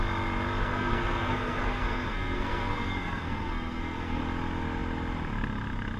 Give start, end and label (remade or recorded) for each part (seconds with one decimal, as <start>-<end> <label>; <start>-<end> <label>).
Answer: 0.0-0.6 recorded; 0.6-4.2 remade; 4.2-6.0 recorded